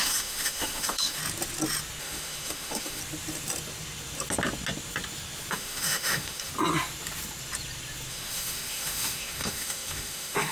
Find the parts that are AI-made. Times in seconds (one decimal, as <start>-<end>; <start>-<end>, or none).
0.0-1.2; 2.0-3.0; 5.5-6.5; 8.1-10.5